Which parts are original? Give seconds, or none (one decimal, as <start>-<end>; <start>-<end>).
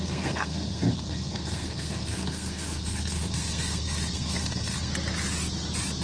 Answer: 4.9-6.0